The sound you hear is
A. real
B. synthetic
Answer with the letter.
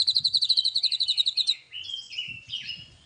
B